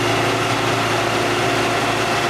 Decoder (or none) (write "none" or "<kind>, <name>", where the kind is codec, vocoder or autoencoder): none